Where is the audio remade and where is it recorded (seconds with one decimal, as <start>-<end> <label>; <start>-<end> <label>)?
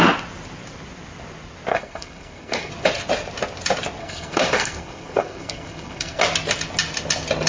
0.0-1.7 recorded; 1.7-2.7 remade; 2.7-4.0 recorded; 4.0-6.2 remade; 6.2-7.5 recorded